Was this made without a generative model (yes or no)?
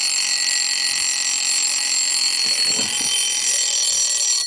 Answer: yes